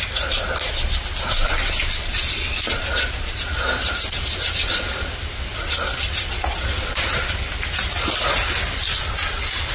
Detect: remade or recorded recorded